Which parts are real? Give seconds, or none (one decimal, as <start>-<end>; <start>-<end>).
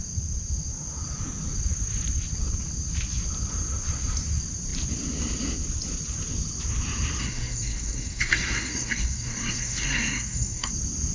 0.0-7.2; 10.7-11.1